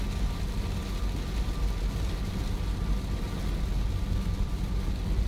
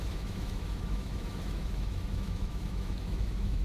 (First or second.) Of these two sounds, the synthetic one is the second